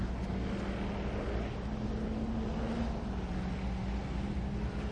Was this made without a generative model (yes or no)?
yes